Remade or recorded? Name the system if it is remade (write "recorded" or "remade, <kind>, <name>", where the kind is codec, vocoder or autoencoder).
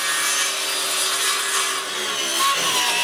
recorded